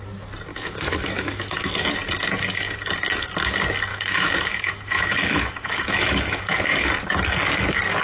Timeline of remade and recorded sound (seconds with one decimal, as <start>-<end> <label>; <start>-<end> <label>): 0.0-0.5 recorded; 0.5-1.7 remade; 1.7-3.9 recorded; 3.9-6.9 remade; 6.9-8.0 recorded